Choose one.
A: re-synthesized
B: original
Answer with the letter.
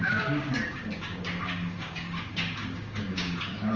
A